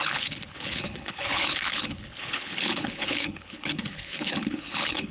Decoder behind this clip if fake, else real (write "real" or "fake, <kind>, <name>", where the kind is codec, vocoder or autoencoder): fake, codec, HILCodec